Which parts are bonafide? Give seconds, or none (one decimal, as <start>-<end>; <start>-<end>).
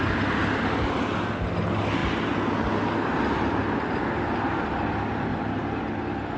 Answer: 0.0-6.4